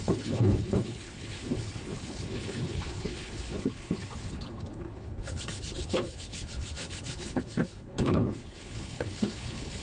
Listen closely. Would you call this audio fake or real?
fake